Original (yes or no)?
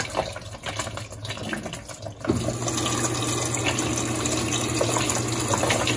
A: yes